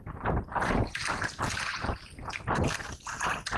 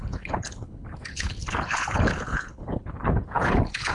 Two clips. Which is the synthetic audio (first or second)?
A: second